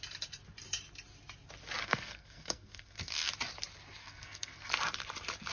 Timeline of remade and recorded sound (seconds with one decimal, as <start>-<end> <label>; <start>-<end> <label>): 0.0-1.8 recorded; 1.8-3.3 remade; 3.3-4.0 recorded; 4.0-4.7 remade; 4.7-5.5 recorded

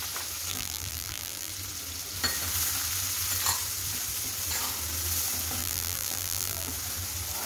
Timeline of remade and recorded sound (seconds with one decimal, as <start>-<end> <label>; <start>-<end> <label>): 0.0-0.5 recorded; 0.5-1.5 remade; 1.5-5.6 recorded; 5.6-6.7 remade; 6.7-7.5 recorded

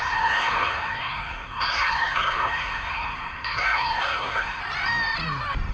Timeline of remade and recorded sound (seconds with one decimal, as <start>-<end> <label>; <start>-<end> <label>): 0.0-4.6 remade; 4.6-5.7 recorded

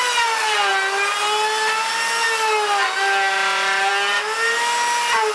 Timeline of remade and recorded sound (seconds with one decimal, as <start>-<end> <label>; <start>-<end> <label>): 0.0-5.3 recorded

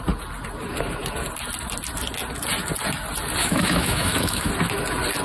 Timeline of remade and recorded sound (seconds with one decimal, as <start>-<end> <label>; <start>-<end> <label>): 0.0-3.4 recorded; 3.4-4.5 remade; 4.5-5.2 recorded

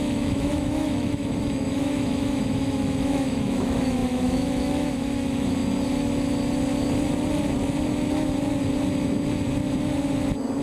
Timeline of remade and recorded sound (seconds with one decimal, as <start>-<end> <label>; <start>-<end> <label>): 0.0-5.6 remade; 5.6-10.6 recorded